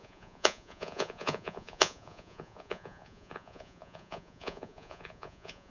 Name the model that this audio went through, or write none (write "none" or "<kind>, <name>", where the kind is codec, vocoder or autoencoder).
vocoder, Vocos